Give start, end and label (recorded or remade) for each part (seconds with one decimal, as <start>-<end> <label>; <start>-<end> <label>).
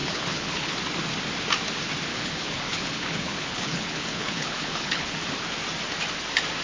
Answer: 0.0-0.8 remade; 0.8-2.1 recorded; 2.1-5.1 remade; 5.1-6.6 recorded